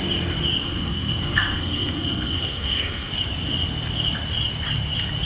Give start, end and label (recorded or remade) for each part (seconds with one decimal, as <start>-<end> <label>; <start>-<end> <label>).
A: 0.0-0.6 recorded; 0.6-3.1 remade; 3.1-5.2 recorded